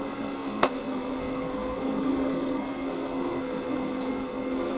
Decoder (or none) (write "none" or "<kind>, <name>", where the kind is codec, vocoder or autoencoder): codec, SNAC